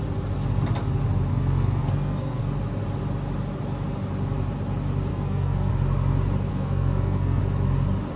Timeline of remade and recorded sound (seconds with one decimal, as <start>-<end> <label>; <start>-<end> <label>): 0.0-1.3 recorded; 1.3-2.4 remade; 2.4-5.1 recorded; 5.1-5.7 remade; 5.7-6.5 recorded; 6.5-7.4 remade; 7.4-8.2 recorded